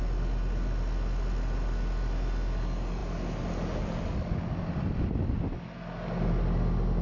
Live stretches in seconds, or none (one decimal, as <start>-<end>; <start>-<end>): 0.0-7.0